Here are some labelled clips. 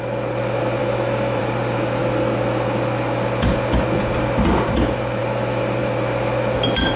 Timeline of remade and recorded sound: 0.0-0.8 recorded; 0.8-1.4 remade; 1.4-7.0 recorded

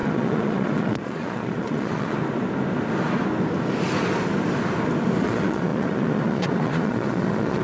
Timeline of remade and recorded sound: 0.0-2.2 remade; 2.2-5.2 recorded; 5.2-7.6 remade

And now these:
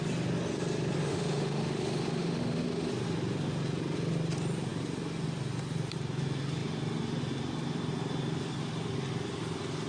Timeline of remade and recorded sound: 0.0-1.1 recorded; 1.1-2.9 remade; 2.9-9.9 recorded

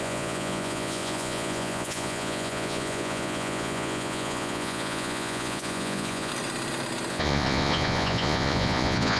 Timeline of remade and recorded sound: 0.0-6.3 remade; 6.3-7.1 recorded; 7.1-9.2 remade

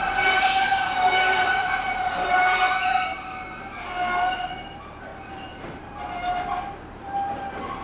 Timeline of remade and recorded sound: 0.0-2.3 remade; 2.3-5.1 recorded; 5.1-5.8 remade; 5.8-7.8 recorded

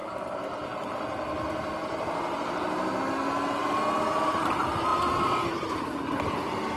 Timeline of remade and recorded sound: 0.0-4.9 recorded; 4.9-6.2 remade; 6.2-6.8 recorded